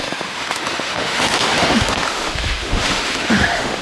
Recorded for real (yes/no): no